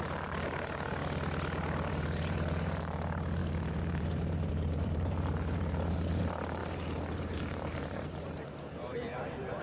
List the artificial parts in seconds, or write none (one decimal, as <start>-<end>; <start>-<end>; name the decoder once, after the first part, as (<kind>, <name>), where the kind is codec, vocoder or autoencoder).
0.0-1.0 (vocoder, BigVGAN v2); 1.9-9.6